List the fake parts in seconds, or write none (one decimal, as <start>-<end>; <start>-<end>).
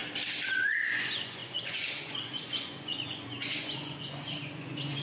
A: 0.6-5.0